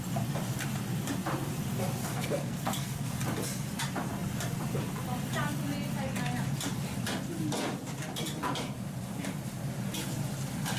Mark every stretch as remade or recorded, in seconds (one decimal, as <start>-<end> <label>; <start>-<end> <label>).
0.0-2.0 recorded; 2.0-3.1 remade; 3.1-10.8 recorded